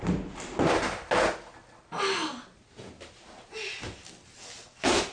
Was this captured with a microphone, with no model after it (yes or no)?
yes